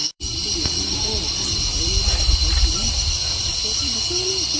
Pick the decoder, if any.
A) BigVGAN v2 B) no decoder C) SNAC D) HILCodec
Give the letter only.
A